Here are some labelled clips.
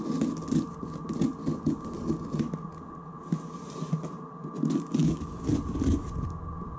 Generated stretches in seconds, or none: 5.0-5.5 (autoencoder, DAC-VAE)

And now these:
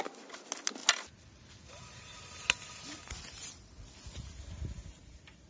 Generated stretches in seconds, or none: none

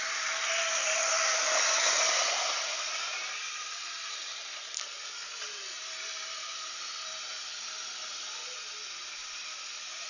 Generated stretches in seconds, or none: none

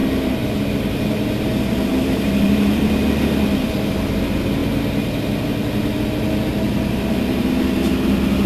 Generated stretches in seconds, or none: 1.9-2.8 (vocoder, BigVGAN v2)

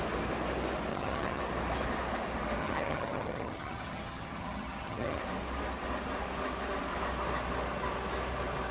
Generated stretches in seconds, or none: 0.9-1.4 (vocoder, HiFi-GAN); 2.6-5.2

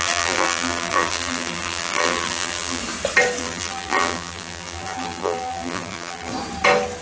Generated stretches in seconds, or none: 0.0-2.8 (vocoder, BigVGAN v2); 3.4-6.3